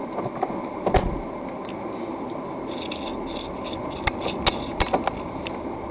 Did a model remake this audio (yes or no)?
no